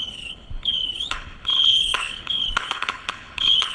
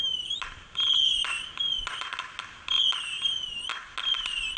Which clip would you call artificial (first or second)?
first